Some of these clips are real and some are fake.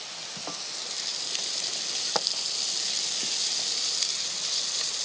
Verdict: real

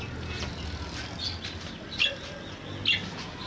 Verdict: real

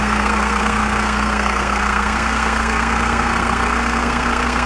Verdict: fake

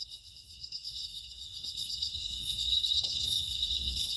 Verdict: fake